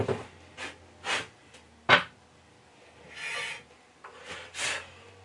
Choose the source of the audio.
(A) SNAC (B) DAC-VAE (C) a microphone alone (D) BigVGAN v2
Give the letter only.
C